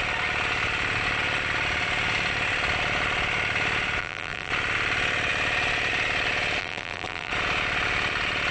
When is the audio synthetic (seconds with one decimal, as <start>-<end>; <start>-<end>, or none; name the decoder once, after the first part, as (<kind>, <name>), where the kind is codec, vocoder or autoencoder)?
4.0-4.5 (vocoder, BigVGAN v2); 6.6-7.3